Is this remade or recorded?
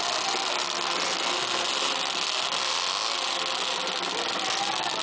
recorded